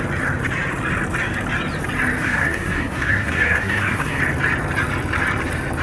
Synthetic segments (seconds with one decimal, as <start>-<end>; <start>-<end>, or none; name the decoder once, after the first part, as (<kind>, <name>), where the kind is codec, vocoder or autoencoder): 2.2-4.2 (codec, SNAC)